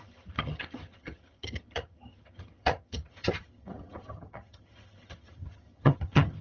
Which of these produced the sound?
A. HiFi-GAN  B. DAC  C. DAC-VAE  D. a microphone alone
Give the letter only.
A